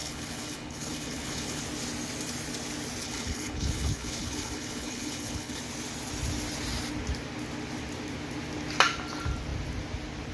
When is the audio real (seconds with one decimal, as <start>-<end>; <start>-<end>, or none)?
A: 1.6-3.0; 5.6-10.3